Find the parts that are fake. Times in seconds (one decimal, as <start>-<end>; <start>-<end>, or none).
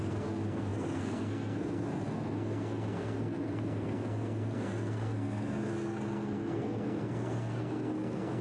0.0-8.4